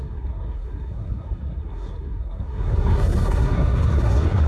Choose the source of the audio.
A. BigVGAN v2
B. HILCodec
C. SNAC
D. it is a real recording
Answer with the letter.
C